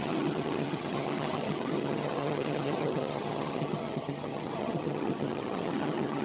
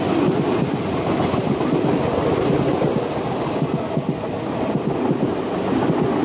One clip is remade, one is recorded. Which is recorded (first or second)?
second